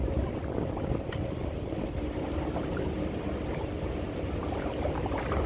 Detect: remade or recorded recorded